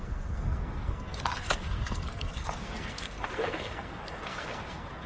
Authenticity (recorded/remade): remade